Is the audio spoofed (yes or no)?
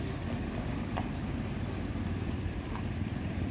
yes